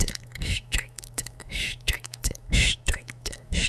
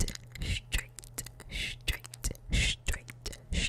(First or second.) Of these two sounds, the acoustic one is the second